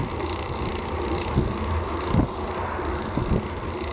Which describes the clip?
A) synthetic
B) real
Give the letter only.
B